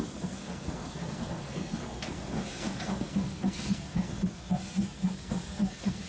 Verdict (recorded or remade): remade